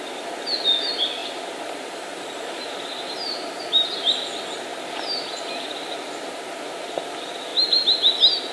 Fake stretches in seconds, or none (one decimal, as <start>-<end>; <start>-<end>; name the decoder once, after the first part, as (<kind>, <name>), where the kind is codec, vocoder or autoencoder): 1.2-4.0 (vocoder, BigVGAN v2); 4.7-5.5